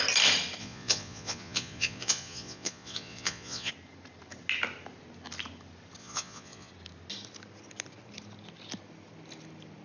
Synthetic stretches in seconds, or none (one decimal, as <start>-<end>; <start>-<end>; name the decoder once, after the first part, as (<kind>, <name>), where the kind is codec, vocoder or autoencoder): 0.6-3.7 (vocoder, Vocos); 6.0-6.7